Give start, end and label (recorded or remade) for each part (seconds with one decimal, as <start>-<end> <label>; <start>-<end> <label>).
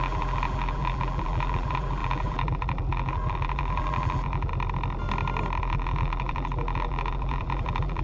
0.0-4.5 remade; 4.5-5.6 recorded; 5.6-8.0 remade